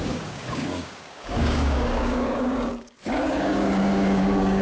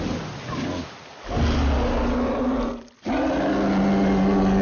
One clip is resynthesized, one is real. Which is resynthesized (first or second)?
first